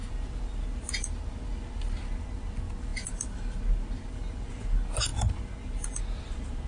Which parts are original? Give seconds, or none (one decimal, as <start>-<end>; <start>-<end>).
0.6-2.9; 3.6-6.7